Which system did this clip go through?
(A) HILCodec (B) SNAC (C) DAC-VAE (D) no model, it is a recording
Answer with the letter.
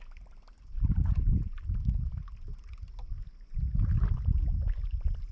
D